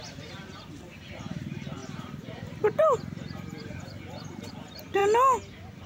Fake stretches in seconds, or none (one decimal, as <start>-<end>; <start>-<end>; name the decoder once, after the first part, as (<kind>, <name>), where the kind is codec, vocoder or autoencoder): 0.0-5.0 (vocoder, BigVGAN v2); 5.5-5.9